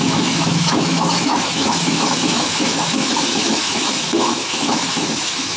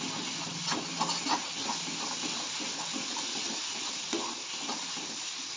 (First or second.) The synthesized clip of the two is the first